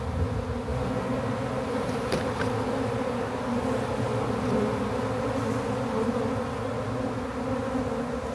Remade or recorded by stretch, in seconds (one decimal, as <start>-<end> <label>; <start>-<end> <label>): 0.0-8.3 recorded